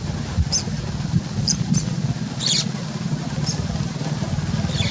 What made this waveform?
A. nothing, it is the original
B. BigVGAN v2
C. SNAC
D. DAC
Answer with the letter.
A